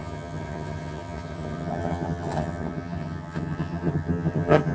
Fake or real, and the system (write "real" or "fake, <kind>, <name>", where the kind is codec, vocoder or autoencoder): fake, vocoder, HiFi-GAN